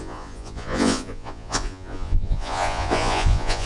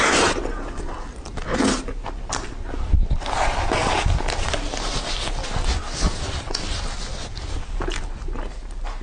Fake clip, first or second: first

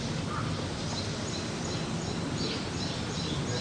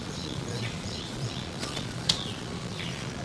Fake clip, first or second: second